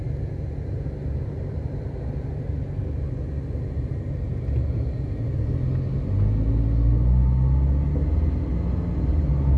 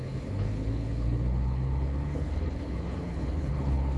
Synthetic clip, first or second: second